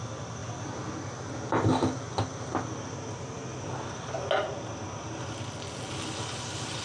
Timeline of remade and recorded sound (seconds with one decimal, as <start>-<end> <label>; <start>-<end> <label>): 0.0-6.8 recorded